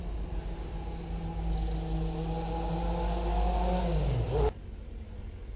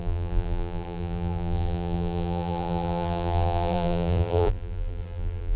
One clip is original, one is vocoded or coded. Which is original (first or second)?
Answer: first